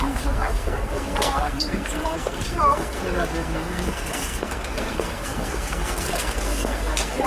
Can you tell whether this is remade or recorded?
remade